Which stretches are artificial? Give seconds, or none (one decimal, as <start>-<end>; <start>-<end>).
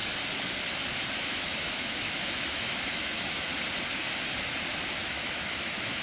1.1-3.5; 4.9-6.0